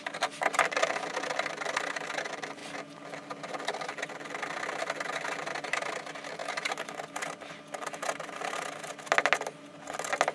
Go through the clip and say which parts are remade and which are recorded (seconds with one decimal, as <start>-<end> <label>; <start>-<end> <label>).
0.0-10.3 recorded